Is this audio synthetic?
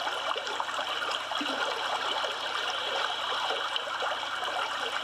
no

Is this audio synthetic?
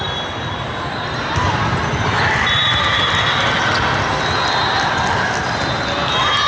no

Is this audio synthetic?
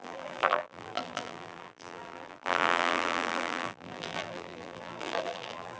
yes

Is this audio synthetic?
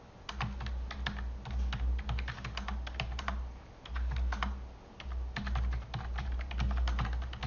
no